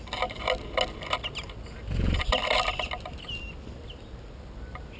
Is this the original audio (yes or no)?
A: yes